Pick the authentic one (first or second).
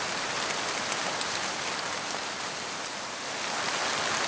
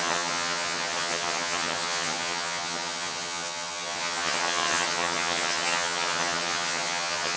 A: first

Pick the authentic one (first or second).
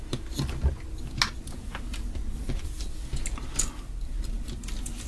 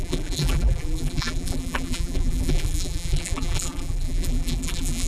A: first